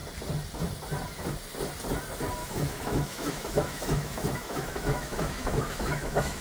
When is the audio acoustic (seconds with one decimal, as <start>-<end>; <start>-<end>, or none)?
0.0-2.4